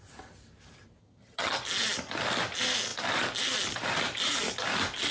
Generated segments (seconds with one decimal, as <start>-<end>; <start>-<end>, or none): 1.0-1.6